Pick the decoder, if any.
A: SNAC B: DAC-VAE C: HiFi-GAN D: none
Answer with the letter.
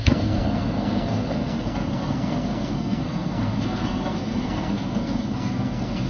A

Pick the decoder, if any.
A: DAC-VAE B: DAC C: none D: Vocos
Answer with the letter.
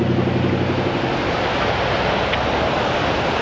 C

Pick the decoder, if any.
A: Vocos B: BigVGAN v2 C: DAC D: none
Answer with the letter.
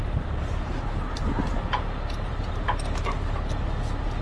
D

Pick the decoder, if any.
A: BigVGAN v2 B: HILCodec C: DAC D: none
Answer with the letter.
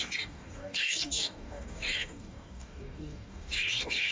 C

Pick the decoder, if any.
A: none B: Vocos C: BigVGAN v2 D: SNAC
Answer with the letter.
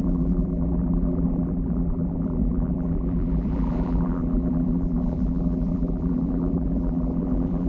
C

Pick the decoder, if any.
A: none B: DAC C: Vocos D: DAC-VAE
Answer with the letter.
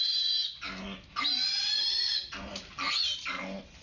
A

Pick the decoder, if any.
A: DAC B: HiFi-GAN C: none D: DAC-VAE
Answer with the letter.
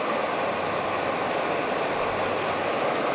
C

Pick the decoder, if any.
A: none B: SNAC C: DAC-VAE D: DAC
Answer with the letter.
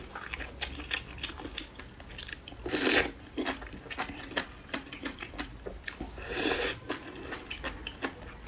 A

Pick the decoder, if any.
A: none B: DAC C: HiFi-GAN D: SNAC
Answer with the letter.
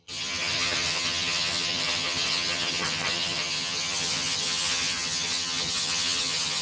C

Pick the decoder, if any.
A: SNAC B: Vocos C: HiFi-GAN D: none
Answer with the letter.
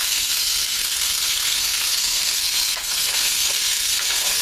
A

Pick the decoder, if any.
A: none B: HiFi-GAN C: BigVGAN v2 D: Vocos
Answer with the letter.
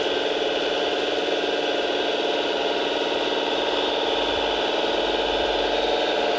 A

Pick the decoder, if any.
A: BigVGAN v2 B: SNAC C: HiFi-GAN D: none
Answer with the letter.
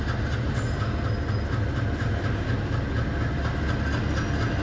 D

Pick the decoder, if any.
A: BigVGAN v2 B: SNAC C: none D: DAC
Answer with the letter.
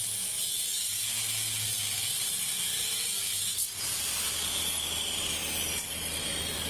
C